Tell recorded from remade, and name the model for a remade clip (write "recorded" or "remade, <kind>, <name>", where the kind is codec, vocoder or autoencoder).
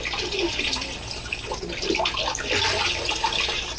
recorded